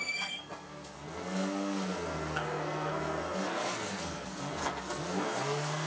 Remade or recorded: remade